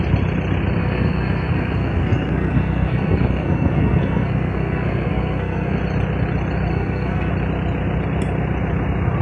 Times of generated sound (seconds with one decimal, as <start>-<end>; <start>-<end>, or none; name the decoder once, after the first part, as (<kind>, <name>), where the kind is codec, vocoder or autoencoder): 0.8-5.8 (codec, SNAC); 6.7-7.3

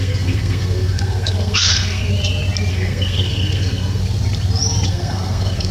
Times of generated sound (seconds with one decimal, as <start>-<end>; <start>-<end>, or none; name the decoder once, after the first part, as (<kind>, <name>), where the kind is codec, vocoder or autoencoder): 0.0-2.1 (codec, SNAC); 2.7-4.0; 4.9-5.7

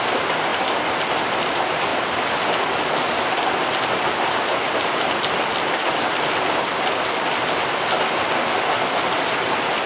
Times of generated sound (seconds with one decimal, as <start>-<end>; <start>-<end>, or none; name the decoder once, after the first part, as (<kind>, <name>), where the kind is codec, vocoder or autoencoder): none

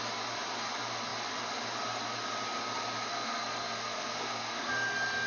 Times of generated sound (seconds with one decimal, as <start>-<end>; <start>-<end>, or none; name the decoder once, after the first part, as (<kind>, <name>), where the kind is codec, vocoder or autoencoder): 3.1-5.3 (codec, SNAC)

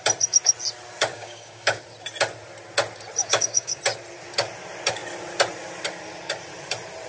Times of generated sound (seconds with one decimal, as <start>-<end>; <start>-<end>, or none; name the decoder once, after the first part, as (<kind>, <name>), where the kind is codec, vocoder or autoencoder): 1.1-1.8 (codec, DAC); 3.2-3.8

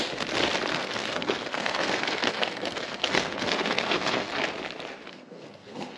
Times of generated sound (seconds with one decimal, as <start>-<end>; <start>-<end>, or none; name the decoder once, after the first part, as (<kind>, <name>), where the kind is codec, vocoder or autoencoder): 0.7-4.3 (codec, SNAC); 5.1-6.0

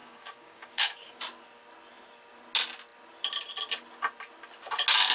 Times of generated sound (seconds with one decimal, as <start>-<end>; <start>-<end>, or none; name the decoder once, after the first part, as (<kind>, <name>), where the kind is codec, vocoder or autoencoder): 0.0-1.2 (codec, DAC)

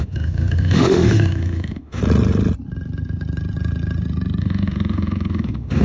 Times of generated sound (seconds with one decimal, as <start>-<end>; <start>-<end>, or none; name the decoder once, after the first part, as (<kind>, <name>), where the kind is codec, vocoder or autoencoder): 0.0-2.0 (autoencoder, DAC-VAE); 4.4-5.8